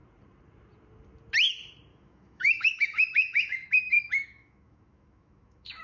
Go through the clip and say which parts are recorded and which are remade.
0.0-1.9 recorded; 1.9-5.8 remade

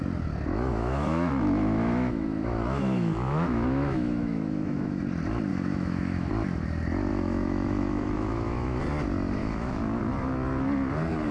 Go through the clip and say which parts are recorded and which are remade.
0.0-0.7 recorded; 0.7-5.0 remade; 5.0-5.5 recorded; 5.5-6.3 remade; 6.3-7.1 recorded; 7.1-8.8 remade; 8.8-9.4 recorded; 9.4-10.0 remade; 10.0-11.3 recorded

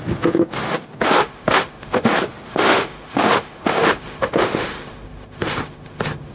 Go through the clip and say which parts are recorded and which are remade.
0.0-1.2 recorded; 1.2-2.1 remade; 2.1-2.5 recorded; 2.5-6.3 remade

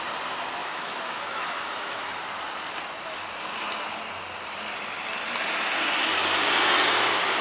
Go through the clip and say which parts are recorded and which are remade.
0.0-0.6 recorded; 0.6-2.2 remade; 2.2-7.4 recorded

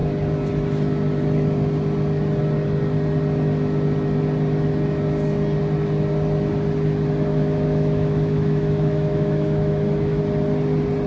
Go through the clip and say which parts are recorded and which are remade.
0.0-7.3 recorded; 7.3-10.2 remade; 10.2-11.1 recorded

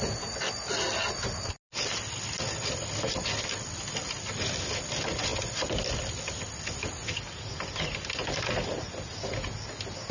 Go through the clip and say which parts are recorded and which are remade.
0.0-10.1 recorded

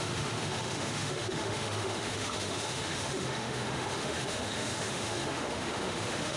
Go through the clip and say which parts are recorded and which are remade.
0.0-6.4 remade

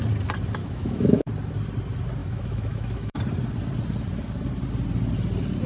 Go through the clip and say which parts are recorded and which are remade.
0.0-0.6 recorded; 0.6-1.3 remade; 1.3-2.2 recorded; 2.2-3.2 remade; 3.2-5.7 recorded